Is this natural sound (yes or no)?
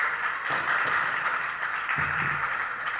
no